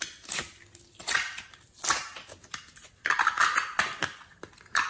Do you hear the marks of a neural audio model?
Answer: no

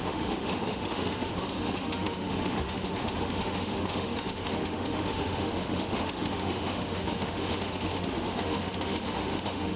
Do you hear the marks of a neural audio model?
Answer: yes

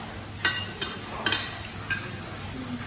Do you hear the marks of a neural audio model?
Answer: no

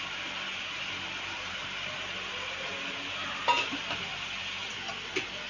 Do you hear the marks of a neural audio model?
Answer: no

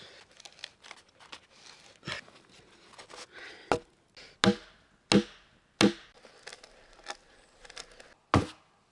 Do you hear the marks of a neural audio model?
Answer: no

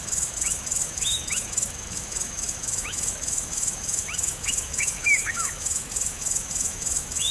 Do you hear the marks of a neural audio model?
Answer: yes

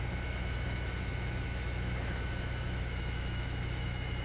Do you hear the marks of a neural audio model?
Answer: yes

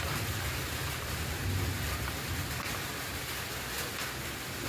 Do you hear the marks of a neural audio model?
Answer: no